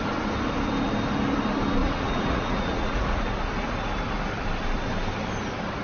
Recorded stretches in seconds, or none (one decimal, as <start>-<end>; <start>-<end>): 0.0-1.8; 3.2-5.8